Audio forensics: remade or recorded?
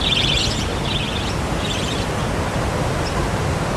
recorded